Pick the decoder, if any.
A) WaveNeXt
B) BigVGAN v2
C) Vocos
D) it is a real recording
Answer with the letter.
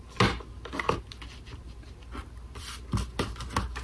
D